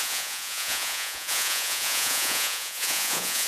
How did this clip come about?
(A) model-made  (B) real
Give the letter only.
A